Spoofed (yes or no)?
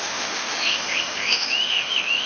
yes